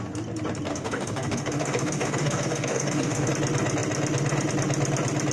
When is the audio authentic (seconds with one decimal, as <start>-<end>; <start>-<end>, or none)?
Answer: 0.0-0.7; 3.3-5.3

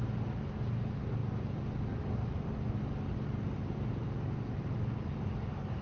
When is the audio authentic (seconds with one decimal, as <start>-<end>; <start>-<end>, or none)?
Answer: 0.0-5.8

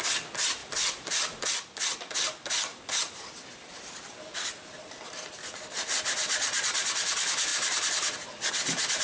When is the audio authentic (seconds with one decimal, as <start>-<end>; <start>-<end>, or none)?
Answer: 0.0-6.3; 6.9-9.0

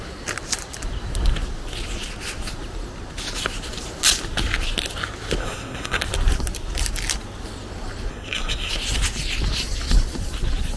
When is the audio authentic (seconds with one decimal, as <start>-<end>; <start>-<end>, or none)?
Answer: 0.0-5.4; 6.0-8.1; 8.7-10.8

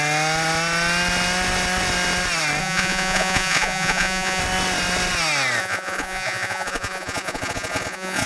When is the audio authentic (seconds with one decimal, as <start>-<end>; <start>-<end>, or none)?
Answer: 0.0-2.6; 4.4-5.6